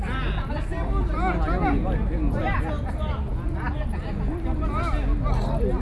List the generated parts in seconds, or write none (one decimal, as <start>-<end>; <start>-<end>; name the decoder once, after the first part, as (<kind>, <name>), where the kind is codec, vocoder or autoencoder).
none